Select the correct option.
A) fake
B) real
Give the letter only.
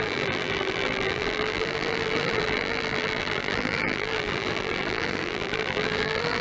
A